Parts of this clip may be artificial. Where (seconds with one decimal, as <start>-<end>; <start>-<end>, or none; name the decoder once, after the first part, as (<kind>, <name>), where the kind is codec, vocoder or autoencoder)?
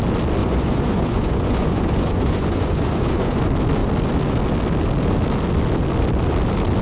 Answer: 0.4-3.4 (vocoder, Vocos)